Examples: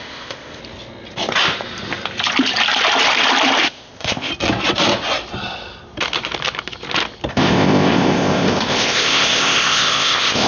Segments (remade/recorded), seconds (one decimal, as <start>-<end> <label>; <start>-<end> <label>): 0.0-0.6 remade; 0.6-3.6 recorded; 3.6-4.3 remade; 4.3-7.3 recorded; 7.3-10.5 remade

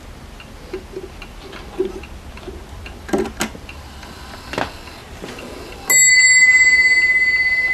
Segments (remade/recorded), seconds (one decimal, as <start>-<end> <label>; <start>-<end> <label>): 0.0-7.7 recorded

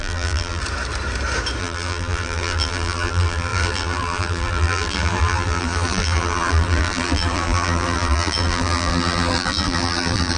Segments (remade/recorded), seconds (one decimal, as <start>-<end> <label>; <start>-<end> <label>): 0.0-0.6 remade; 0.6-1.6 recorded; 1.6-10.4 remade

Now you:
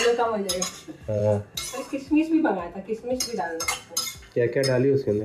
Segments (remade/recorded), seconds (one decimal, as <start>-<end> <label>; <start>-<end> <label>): 0.0-1.2 remade; 1.2-3.4 recorded; 3.4-3.8 remade; 3.8-5.2 recorded